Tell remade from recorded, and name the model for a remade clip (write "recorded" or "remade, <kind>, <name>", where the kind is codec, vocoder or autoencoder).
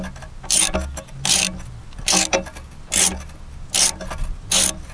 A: recorded